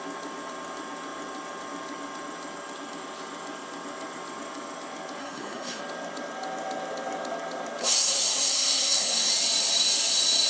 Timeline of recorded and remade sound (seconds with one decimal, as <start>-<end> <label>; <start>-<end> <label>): 0.0-5.2 recorded; 5.2-5.8 remade; 5.8-7.8 recorded; 7.8-9.3 remade; 9.3-10.5 recorded